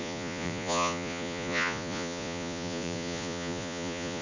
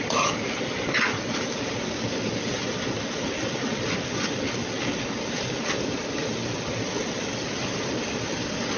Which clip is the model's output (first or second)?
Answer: first